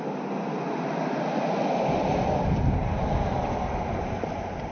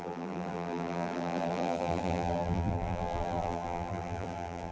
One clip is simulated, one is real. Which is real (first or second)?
first